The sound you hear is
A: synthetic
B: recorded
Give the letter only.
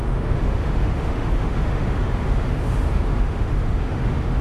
A